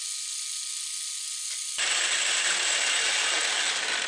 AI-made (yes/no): no